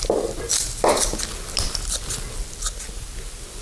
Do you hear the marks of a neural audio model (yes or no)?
no